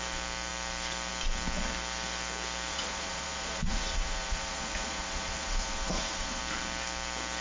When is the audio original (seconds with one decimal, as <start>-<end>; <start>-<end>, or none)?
0.0-2.7; 6.4-7.4